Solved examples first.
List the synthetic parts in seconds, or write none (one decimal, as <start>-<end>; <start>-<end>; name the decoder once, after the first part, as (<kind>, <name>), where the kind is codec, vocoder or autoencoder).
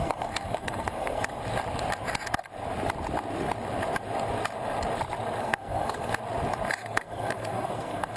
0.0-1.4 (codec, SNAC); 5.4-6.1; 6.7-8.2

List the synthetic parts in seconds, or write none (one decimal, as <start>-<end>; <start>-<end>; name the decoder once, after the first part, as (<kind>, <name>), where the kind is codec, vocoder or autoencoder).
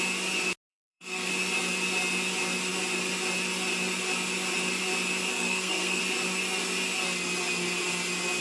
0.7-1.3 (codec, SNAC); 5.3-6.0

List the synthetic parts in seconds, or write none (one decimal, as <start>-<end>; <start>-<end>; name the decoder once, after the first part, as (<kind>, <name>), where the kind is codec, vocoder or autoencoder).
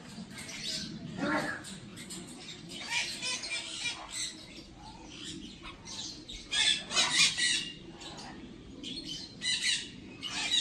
none